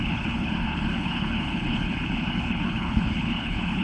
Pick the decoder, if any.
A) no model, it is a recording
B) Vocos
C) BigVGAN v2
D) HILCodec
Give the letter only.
D